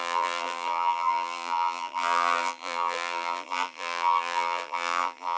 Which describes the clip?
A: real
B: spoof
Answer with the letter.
B